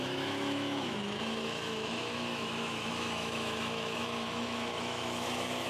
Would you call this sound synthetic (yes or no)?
yes